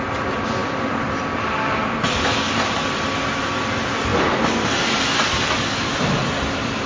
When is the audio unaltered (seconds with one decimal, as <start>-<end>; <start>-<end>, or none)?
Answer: 0.0-6.9